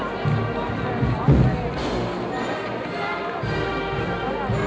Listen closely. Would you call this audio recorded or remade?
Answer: recorded